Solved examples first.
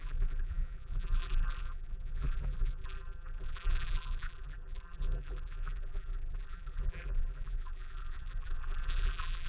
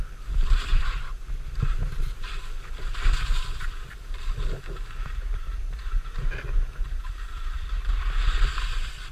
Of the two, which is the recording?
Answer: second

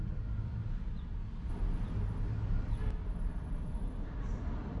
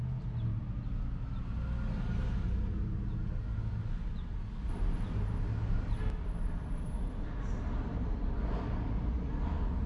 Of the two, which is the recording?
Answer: second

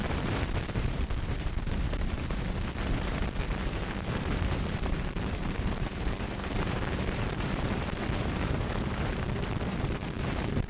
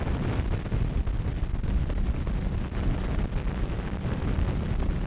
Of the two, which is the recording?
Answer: second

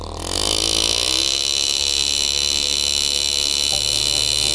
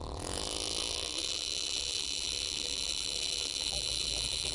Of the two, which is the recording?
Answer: first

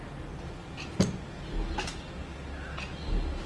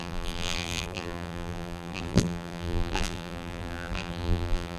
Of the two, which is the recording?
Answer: first